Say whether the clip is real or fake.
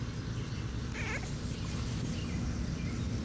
real